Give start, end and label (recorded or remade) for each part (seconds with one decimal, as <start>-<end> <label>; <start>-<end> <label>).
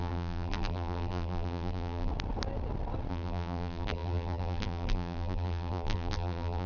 0.0-2.1 remade; 2.1-3.1 recorded; 3.1-6.7 remade